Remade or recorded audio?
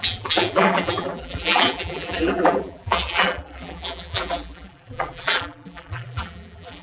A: remade